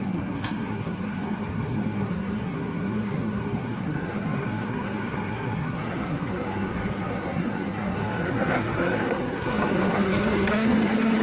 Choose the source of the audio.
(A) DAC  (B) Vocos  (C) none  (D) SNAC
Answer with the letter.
D